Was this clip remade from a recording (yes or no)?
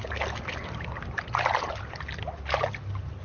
no